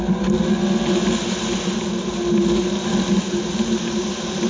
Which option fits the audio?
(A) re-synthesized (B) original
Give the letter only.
B